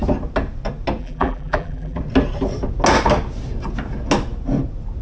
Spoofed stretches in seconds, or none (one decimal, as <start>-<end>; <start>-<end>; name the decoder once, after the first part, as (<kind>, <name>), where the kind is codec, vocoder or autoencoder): 1.0-2.0 (vocoder, BigVGAN v2)